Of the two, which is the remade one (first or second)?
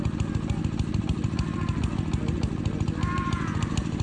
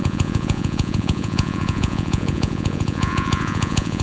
second